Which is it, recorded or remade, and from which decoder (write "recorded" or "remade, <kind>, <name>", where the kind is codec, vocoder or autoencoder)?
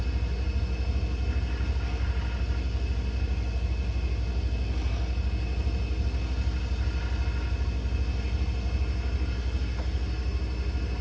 recorded